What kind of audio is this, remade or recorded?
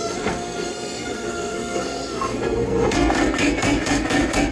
remade